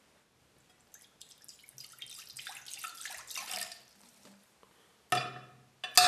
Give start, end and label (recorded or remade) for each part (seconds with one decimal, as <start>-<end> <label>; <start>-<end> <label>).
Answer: 0.0-6.1 recorded